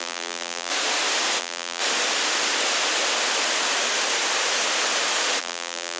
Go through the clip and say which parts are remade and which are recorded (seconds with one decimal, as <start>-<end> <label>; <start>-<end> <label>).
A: 0.0-0.7 remade; 0.7-1.4 recorded; 1.4-1.8 remade; 1.8-5.4 recorded; 5.4-6.0 remade